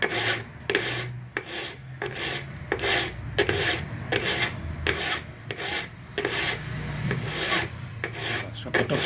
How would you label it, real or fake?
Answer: real